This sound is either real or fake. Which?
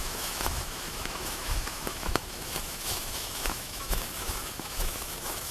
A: fake